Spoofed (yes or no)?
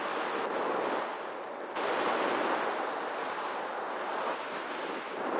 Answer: no